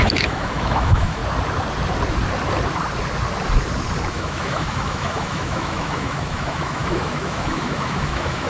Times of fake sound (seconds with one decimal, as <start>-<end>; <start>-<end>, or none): 0.0-1.2; 4.1-8.5